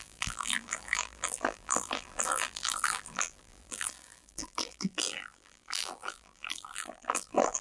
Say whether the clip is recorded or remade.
remade